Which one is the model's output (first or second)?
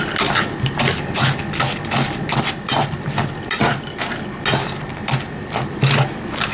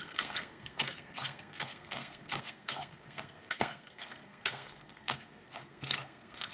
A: second